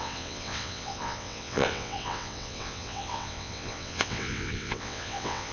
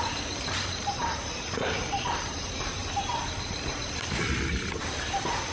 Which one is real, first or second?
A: second